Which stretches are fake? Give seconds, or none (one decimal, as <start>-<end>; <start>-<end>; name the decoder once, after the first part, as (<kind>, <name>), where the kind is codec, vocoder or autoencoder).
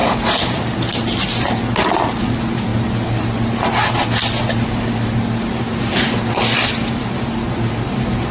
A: none